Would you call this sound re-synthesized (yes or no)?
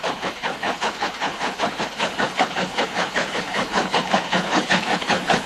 yes